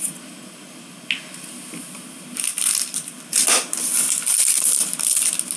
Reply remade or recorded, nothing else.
recorded